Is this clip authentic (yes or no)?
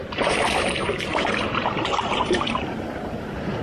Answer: no